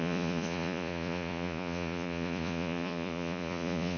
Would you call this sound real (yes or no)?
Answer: no